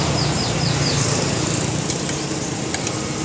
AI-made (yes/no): no